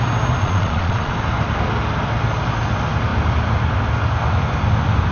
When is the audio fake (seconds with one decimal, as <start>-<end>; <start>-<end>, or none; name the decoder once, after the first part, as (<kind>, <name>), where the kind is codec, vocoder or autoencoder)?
0.4-1.1 (vocoder, Vocos)

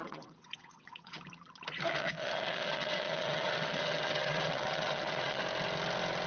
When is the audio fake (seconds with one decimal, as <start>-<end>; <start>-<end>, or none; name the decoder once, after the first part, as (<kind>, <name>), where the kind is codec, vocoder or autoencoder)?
0.0-1.2 (vocoder, WaveNeXt); 1.9-5.4